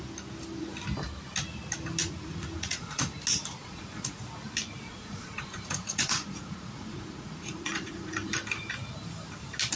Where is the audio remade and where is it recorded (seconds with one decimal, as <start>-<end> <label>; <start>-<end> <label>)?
0.0-2.0 recorded; 2.0-3.0 remade; 3.0-3.6 recorded; 3.6-4.2 remade; 4.2-4.9 recorded; 4.9-8.3 remade; 8.3-9.8 recorded